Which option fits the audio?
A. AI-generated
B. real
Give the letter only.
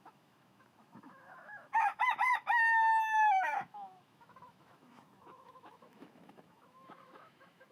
A